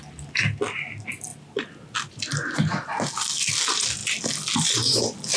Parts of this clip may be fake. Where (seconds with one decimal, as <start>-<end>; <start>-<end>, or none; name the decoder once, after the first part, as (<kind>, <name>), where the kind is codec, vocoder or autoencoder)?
none